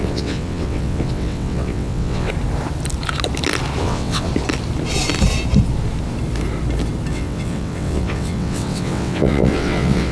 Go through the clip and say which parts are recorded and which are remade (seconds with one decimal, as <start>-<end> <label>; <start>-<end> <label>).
0.0-2.3 remade; 2.3-3.8 recorded; 3.8-4.3 remade; 4.3-7.1 recorded; 7.1-10.1 remade